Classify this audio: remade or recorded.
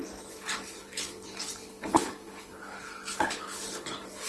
remade